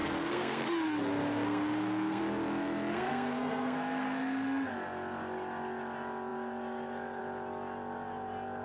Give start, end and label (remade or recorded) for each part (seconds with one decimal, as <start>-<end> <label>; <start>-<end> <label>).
0.0-2.2 remade; 2.2-2.9 recorded; 2.9-4.7 remade; 4.7-8.6 recorded